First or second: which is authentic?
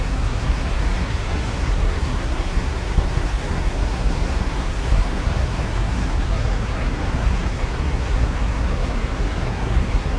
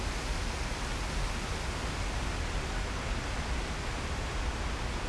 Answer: second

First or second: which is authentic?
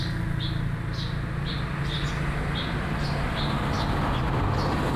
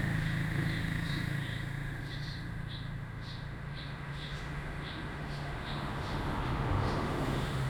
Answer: first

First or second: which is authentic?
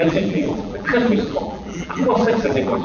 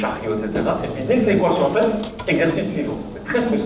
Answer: second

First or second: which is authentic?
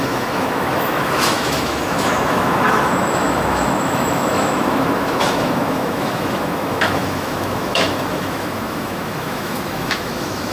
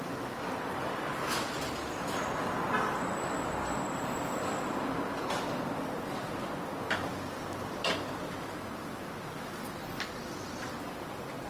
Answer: second